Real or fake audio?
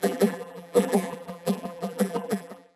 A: fake